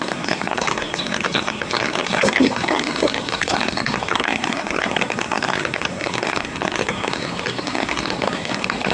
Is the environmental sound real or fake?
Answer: fake